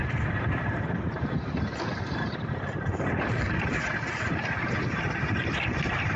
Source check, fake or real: fake